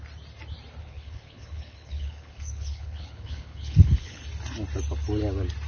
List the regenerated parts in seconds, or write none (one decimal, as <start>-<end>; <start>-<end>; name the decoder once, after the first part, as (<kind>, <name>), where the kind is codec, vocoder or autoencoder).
0.8-4.2 (codec, HILCodec)